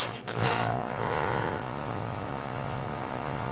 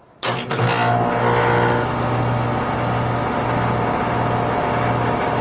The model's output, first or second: first